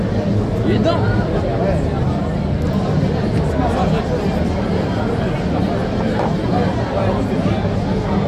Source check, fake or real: real